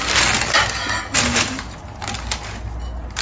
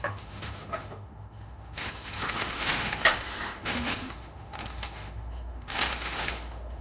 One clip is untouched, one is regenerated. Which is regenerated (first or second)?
second